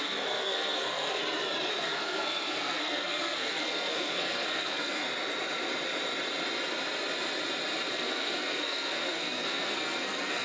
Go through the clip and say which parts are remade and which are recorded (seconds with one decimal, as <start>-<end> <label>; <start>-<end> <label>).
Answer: 0.0-1.2 remade; 1.2-1.7 recorded; 1.7-5.0 remade; 5.0-7.9 recorded; 7.9-10.4 remade

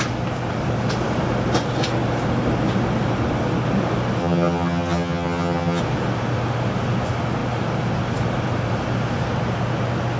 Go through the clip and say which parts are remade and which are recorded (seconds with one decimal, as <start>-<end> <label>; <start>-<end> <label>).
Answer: 0.0-4.2 recorded; 4.2-5.8 remade; 5.8-10.2 recorded

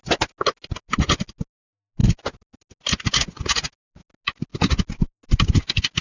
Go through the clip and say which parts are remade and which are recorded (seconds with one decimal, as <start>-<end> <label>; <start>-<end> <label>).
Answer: 0.0-6.0 recorded

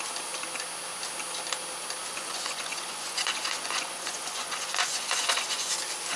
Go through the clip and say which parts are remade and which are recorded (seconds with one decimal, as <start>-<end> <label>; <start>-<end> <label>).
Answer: 0.0-2.1 recorded; 2.1-5.7 remade; 5.7-6.2 recorded